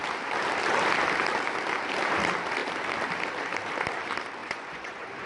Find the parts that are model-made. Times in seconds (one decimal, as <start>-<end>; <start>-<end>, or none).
4.4-5.3